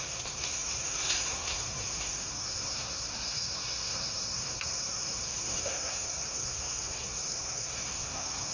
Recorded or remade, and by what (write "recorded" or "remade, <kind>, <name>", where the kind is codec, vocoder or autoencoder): remade, codec, SNAC